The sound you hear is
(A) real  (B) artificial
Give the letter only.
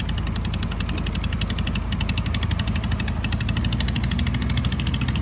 A